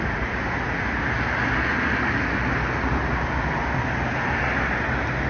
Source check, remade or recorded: recorded